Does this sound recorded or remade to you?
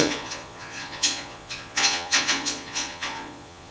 remade